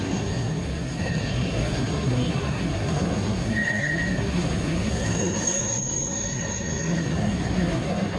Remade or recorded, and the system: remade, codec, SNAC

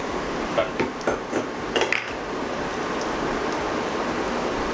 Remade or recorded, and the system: recorded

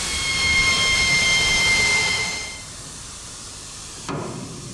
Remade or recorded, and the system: remade, vocoder, BigVGAN v2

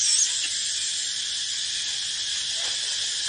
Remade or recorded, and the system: recorded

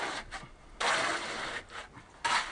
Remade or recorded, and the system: recorded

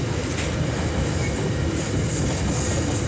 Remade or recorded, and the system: recorded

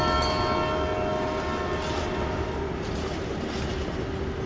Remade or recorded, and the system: recorded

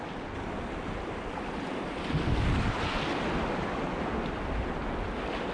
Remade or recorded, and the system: recorded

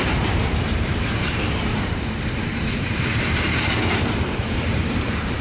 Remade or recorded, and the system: remade, vocoder, BigVGAN v2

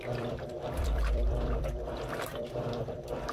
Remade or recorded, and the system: remade, vocoder, BigVGAN v2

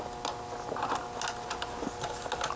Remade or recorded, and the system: recorded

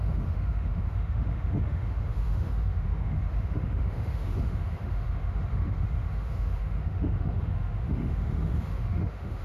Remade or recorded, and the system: remade, autoencoder, DAC-VAE